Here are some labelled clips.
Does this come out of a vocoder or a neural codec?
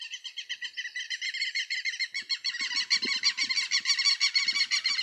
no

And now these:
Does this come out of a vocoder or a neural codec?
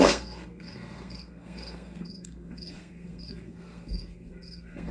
yes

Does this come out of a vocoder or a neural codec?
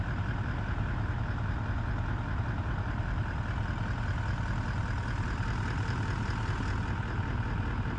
no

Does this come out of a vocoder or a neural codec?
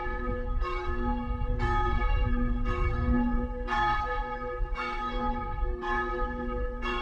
yes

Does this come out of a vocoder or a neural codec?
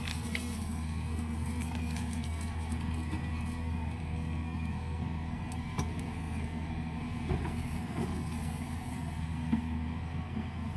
yes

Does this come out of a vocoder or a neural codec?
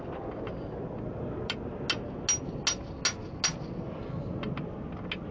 no